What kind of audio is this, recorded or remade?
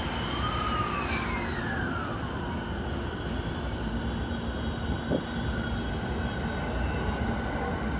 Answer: recorded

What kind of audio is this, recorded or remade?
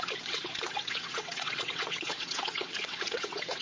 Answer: remade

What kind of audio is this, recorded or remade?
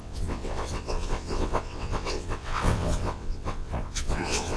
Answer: remade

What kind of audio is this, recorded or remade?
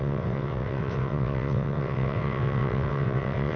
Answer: remade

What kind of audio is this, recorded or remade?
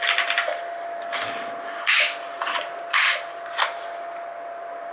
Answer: recorded